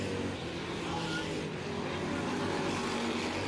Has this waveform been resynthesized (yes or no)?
no